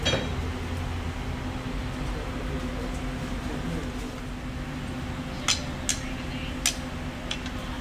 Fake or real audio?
real